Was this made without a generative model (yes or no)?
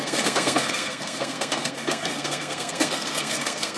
no